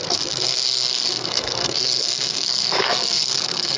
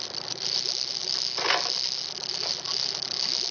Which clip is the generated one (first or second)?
first